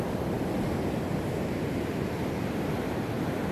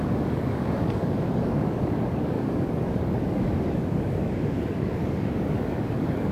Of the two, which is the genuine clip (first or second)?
first